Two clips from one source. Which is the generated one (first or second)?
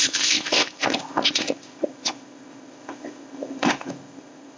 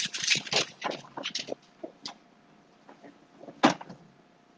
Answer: first